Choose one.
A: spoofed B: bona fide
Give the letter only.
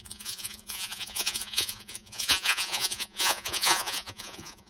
A